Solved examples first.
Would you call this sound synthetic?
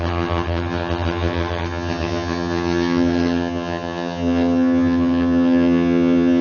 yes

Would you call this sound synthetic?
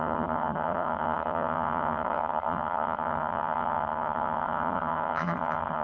yes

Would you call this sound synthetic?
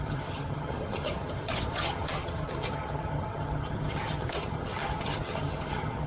yes